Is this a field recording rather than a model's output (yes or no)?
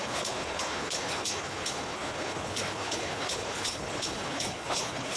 no